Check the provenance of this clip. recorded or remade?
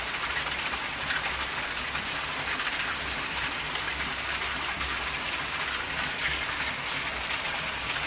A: recorded